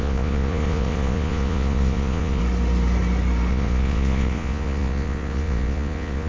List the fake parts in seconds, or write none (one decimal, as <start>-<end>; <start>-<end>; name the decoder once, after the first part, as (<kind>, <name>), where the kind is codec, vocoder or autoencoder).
0.0-2.4 (vocoder, Vocos); 3.5-6.3